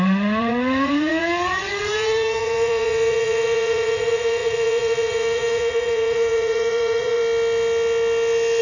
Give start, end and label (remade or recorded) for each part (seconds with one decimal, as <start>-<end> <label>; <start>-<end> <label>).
0.0-7.2 remade; 7.2-8.6 recorded